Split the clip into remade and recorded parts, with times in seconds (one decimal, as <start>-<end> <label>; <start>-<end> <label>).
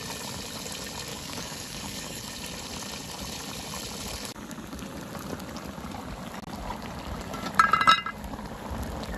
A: 0.0-1.1 recorded; 1.1-2.3 remade; 2.3-9.2 recorded